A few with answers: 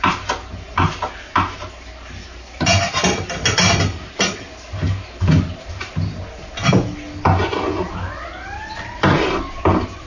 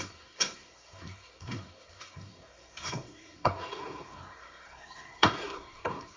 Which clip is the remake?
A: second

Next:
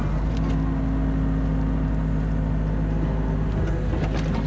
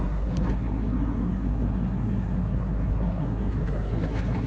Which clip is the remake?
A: second